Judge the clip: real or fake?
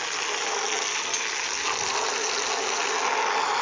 real